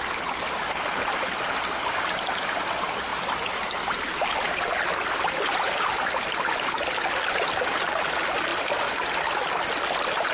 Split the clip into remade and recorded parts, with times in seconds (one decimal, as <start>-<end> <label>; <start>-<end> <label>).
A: 0.0-10.3 recorded